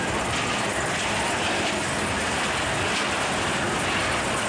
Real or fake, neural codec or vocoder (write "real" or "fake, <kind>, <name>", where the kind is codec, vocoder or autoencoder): real